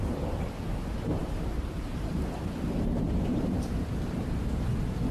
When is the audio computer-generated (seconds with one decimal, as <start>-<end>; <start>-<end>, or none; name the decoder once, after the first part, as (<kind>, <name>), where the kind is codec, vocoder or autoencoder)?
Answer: 1.2-4.2 (vocoder, BigVGAN v2)